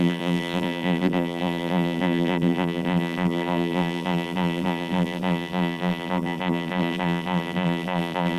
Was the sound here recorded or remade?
remade